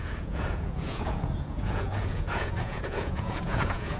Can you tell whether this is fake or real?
fake